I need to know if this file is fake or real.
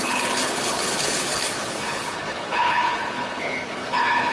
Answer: fake